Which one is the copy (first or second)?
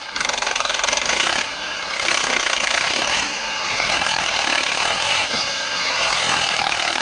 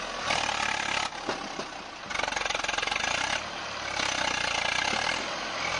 first